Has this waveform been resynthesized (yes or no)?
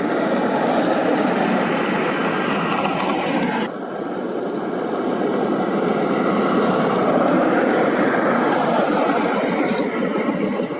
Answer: no